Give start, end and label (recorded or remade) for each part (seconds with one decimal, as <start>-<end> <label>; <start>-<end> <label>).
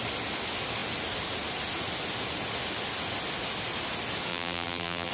0.0-4.3 recorded; 4.3-5.1 remade